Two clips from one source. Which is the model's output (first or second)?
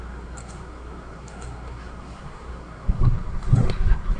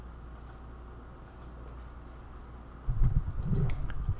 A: first